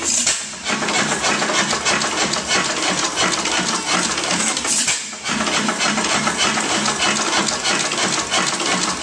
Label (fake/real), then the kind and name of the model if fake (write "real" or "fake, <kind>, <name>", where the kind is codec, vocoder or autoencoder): real